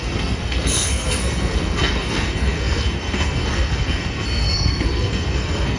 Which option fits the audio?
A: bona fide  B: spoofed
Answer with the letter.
B